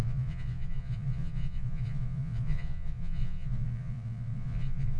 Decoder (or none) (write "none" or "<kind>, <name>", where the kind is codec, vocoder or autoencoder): vocoder, Vocos